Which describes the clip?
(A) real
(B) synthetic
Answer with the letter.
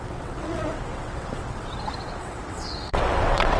B